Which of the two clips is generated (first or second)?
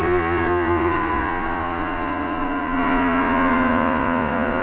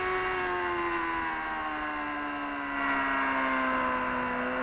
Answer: first